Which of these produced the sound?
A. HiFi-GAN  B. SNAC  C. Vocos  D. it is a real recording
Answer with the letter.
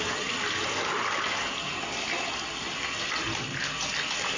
D